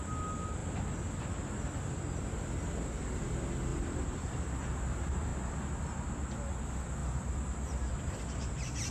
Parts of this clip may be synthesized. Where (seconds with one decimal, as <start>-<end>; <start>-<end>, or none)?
3.7-4.3; 7.0-8.9